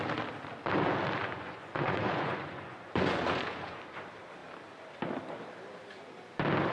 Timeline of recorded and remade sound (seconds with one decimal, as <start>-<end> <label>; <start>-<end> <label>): 0.0-1.2 recorded; 1.2-3.8 remade; 3.8-6.7 recorded